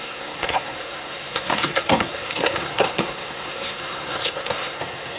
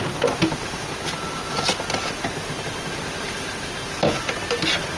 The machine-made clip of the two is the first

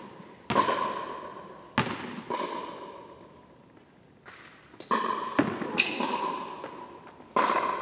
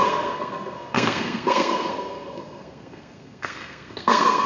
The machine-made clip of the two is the second